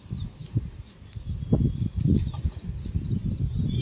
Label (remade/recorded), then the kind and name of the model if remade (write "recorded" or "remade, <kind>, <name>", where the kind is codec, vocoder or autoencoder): recorded